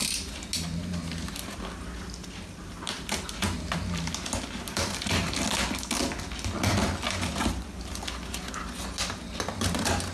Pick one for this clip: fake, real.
real